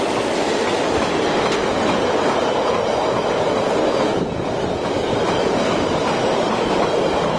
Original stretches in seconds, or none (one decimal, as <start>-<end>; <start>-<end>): 0.0-7.4